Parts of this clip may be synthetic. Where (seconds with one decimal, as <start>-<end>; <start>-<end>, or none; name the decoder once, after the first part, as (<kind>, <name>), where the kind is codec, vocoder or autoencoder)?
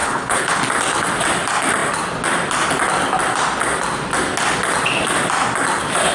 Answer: 0.0-0.6 (codec, HILCodec)